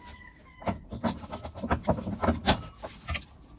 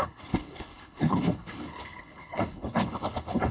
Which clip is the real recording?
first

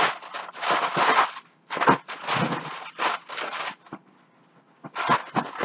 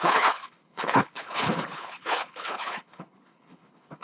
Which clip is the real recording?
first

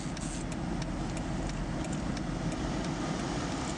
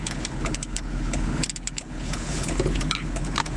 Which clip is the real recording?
first